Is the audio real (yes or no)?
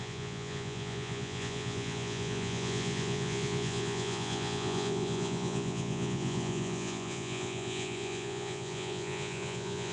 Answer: no